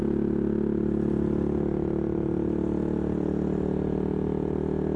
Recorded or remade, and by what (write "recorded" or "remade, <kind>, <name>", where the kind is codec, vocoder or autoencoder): recorded